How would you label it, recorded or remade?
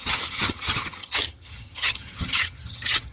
remade